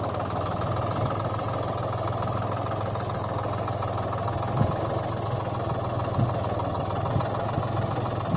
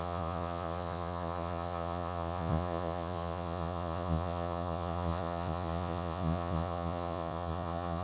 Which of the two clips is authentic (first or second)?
first